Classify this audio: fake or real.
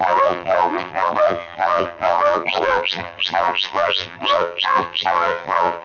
fake